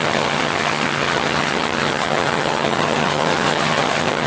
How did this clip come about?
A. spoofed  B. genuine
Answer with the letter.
A